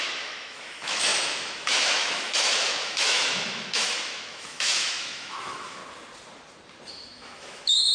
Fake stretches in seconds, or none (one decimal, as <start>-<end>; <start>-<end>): 0.0-5.8; 6.9-7.9